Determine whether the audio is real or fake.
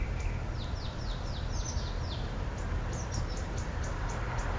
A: real